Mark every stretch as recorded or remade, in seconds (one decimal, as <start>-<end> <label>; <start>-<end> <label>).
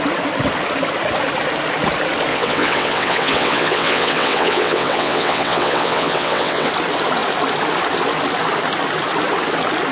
0.0-2.3 recorded; 2.3-6.7 remade; 6.7-9.9 recorded